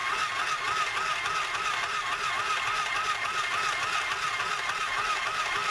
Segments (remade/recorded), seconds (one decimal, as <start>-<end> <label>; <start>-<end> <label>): 0.0-5.7 recorded